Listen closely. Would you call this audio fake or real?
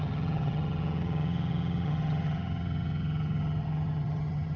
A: fake